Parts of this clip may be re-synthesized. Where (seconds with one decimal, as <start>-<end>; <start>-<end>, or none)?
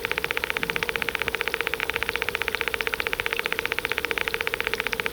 none